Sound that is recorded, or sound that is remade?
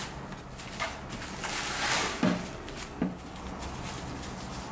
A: recorded